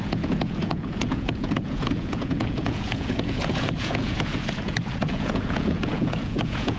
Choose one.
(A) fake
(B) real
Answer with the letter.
A